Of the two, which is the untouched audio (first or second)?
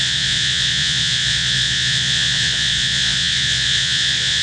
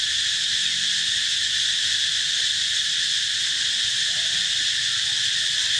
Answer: second